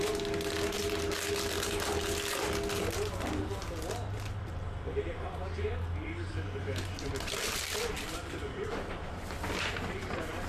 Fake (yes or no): no